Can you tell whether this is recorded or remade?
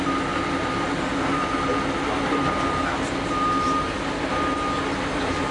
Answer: recorded